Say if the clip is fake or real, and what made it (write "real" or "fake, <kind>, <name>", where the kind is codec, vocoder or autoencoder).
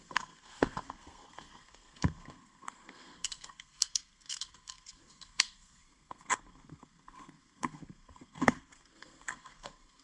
fake, codec, SNAC